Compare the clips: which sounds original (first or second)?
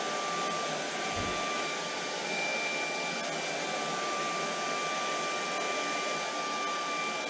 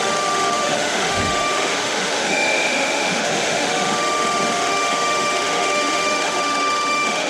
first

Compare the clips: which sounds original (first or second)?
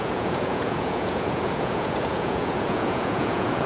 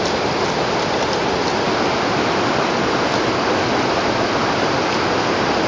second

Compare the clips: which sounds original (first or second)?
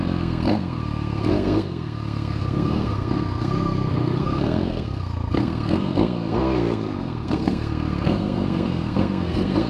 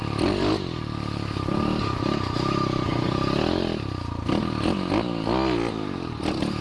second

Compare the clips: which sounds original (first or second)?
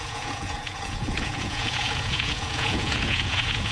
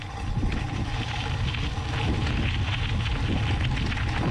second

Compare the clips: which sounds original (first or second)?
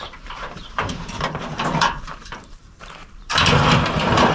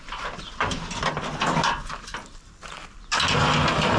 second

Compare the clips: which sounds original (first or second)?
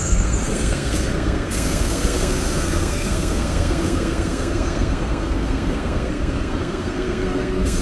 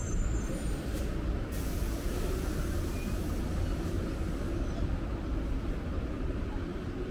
second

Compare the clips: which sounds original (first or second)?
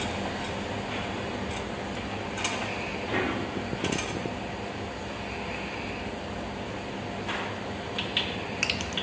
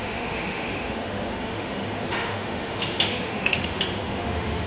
first